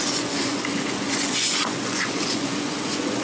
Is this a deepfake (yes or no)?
yes